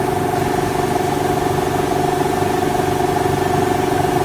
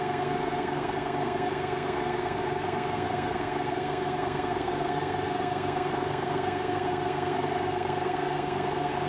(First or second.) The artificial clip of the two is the second